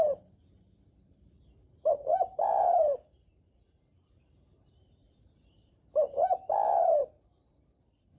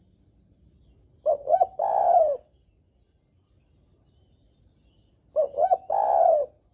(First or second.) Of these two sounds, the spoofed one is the first